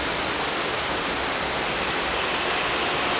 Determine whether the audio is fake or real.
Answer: real